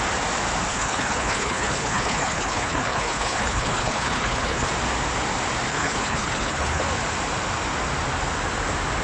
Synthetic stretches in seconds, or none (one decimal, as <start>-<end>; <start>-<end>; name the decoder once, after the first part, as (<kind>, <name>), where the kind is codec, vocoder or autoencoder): 0.7-4.7 (codec, HILCodec); 5.7-6.8

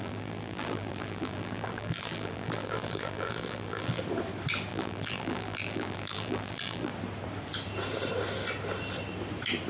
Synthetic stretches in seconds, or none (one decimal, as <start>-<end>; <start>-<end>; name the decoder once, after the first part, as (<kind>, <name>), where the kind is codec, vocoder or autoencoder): 0.0-4.0 (vocoder, BigVGAN v2); 4.7-6.9

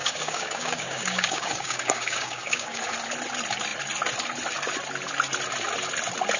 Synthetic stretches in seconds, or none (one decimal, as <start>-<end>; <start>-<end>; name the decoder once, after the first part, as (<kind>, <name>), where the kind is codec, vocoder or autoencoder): 0.0-2.8 (codec, DAC)

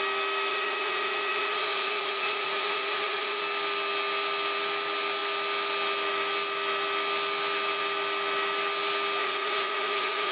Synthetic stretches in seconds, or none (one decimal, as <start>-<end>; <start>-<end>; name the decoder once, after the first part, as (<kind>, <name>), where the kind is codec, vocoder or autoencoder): 0.5-3.4 (vocoder, Vocos); 9.2-10.3